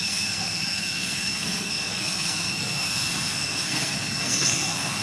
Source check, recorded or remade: remade